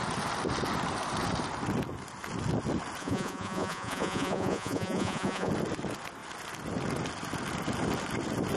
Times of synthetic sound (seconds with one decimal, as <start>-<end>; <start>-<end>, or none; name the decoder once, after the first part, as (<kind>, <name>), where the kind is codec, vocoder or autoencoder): 3.0-5.5 (vocoder, Vocos)